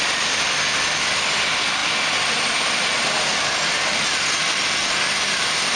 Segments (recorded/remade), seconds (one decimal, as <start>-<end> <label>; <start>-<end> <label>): 0.0-5.8 recorded